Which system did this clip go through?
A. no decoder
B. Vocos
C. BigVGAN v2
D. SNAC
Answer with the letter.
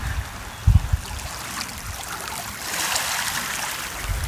A